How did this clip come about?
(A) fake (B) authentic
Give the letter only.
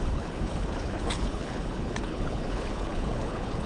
A